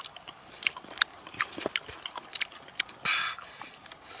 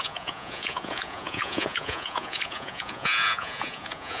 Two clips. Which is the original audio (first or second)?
first